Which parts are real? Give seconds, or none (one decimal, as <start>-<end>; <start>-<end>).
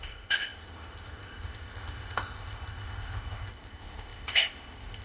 none